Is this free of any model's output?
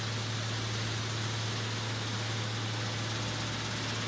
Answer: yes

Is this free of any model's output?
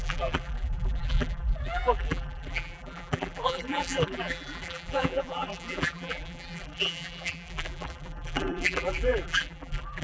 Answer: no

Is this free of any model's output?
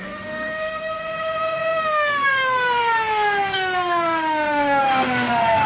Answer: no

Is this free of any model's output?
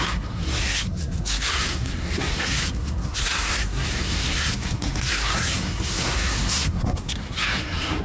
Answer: no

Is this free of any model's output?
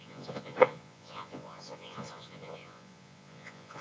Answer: no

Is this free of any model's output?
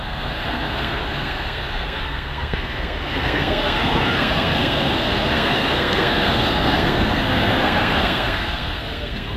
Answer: no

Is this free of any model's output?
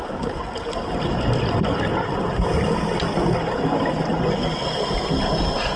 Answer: yes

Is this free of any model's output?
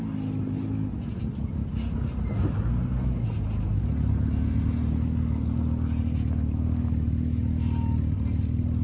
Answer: yes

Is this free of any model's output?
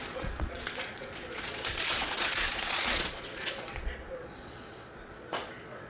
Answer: no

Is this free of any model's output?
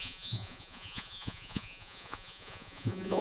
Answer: no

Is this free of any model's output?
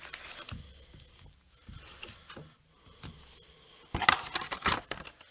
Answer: yes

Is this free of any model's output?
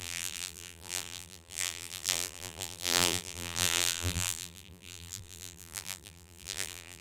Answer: no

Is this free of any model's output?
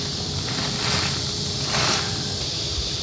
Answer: yes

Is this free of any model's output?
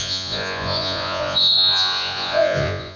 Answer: no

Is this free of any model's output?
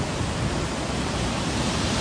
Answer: yes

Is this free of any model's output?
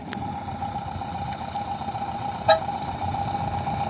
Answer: no